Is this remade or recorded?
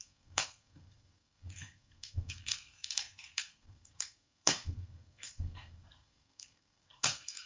remade